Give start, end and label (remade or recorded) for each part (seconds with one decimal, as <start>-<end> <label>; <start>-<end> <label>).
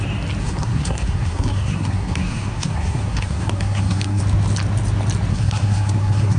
0.0-0.4 recorded; 0.4-4.2 remade; 4.2-5.3 recorded; 5.3-6.4 remade